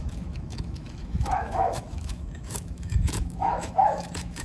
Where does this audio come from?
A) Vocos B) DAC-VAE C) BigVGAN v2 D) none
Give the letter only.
B